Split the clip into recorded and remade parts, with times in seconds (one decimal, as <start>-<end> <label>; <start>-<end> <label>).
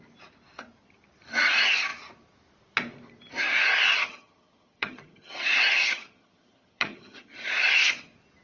0.0-3.9 recorded; 3.9-7.5 remade; 7.5-8.4 recorded